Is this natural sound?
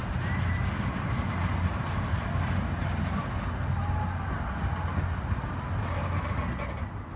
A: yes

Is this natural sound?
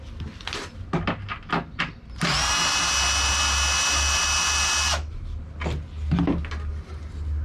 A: yes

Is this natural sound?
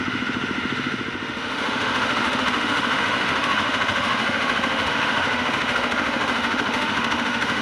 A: no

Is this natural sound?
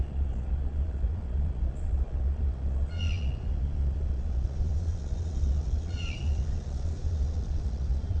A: no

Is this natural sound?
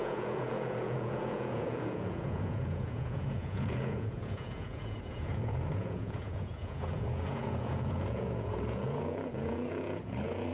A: no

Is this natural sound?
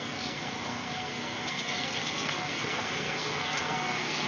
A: no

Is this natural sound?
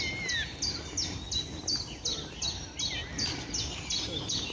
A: yes